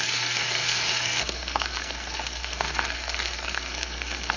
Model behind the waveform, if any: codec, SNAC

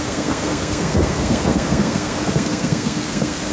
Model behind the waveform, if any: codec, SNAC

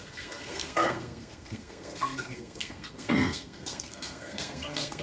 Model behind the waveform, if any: codec, SNAC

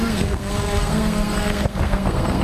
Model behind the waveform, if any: codec, SNAC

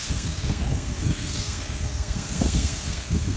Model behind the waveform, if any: codec, SNAC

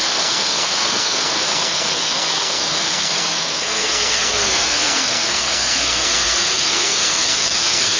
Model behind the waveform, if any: codec, SNAC